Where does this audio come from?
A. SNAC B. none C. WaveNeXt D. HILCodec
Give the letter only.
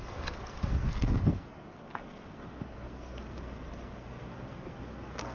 A